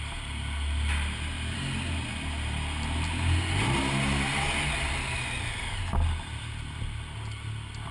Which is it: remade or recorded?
recorded